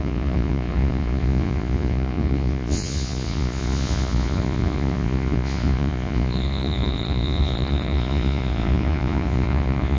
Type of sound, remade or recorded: remade